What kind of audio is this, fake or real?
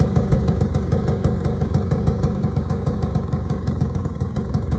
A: fake